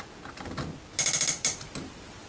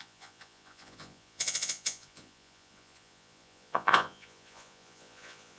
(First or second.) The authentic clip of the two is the first